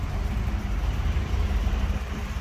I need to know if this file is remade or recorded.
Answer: remade